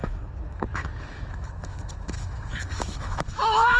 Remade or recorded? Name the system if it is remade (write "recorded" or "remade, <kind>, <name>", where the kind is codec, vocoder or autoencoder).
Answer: remade, autoencoder, DAC-VAE